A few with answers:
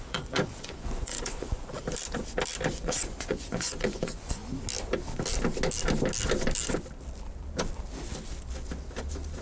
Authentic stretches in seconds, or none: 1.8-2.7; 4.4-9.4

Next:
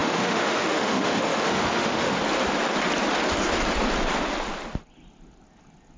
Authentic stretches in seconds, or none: 2.2-6.0

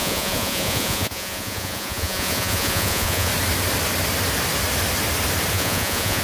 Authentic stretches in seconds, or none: 3.3-5.5

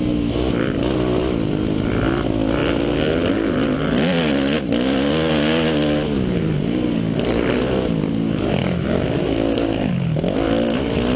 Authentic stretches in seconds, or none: 0.0-8.6; 9.9-11.2

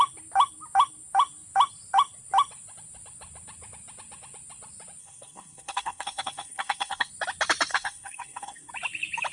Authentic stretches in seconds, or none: 0.0-5.0; 7.1-7.7; 8.7-9.3